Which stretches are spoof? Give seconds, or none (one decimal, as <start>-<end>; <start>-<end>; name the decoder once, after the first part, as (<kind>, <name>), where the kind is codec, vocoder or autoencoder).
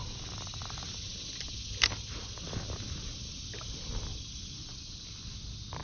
none